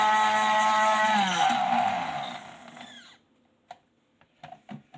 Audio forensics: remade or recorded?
recorded